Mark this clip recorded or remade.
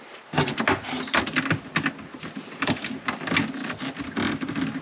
recorded